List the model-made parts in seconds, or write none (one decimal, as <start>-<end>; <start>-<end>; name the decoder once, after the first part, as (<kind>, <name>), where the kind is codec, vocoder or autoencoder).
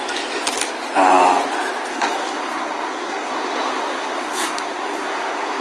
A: 1.9-5.6 (codec, SNAC)